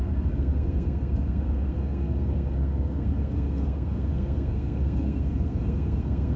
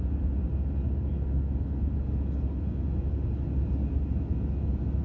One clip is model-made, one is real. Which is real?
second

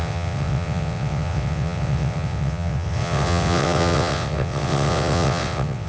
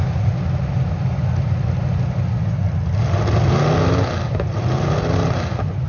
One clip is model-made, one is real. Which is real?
second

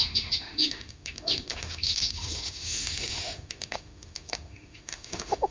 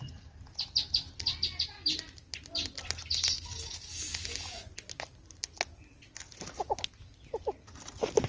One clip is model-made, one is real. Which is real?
second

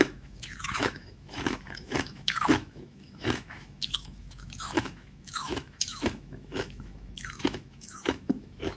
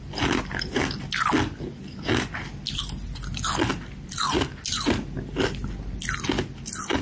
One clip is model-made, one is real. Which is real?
second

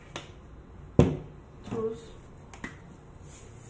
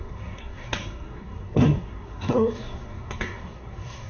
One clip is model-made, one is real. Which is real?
first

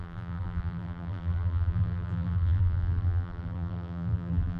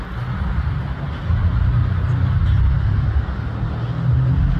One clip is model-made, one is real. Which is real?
second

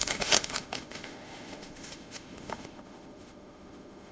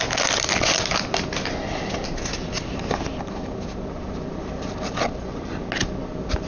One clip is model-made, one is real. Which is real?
second